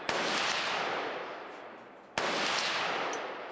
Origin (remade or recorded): recorded